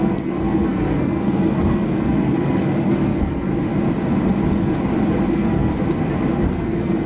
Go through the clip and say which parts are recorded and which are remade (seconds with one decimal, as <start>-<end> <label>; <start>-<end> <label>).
0.0-3.5 remade; 3.5-5.3 recorded; 5.3-5.7 remade; 5.7-6.5 recorded; 6.5-7.1 remade